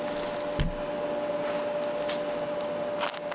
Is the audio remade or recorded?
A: recorded